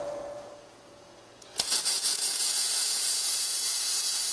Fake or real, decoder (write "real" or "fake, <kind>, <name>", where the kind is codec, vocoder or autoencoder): fake, vocoder, Vocos